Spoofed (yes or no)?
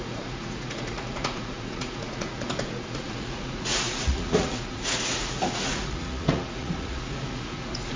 yes